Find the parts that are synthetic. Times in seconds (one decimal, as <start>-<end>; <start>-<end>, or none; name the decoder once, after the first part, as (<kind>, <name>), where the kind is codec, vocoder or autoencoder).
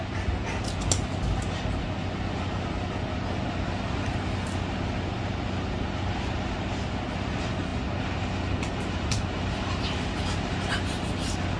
none